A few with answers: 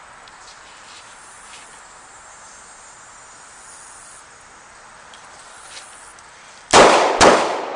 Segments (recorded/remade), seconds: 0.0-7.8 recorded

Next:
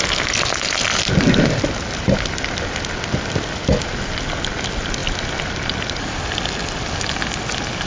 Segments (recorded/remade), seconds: 0.0-7.9 recorded

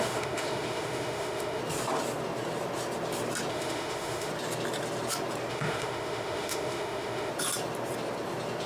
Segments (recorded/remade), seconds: 0.0-1.6 remade; 1.6-3.5 recorded; 3.5-4.3 remade; 4.3-5.5 recorded; 5.5-7.3 remade; 7.3-8.7 recorded

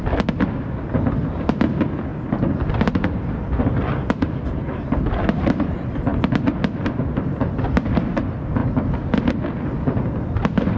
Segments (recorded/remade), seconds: 0.0-10.8 recorded

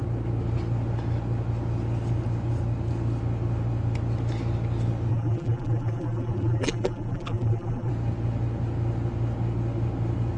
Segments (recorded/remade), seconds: 0.0-5.1 recorded; 5.1-7.9 remade; 7.9-10.4 recorded

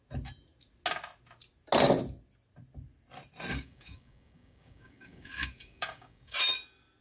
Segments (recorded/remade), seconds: 0.0-3.5 recorded; 3.5-6.4 remade; 6.4-7.0 recorded

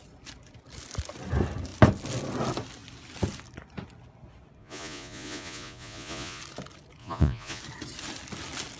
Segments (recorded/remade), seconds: 0.0-4.6 recorded; 4.6-6.4 remade; 6.4-7.0 recorded; 7.0-7.6 remade; 7.6-8.8 recorded